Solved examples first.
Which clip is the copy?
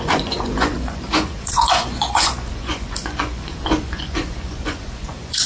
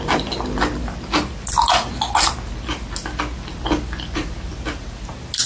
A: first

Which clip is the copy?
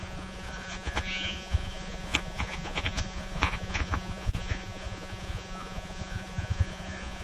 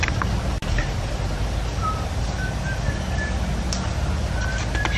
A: first